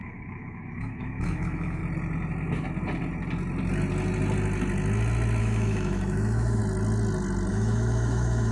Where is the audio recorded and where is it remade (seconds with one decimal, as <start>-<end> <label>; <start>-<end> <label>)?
0.0-1.8 remade; 1.8-5.4 recorded; 5.4-6.6 remade; 6.6-7.5 recorded; 7.5-8.5 remade